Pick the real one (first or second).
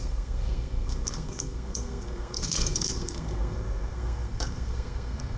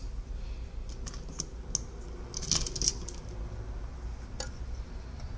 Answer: second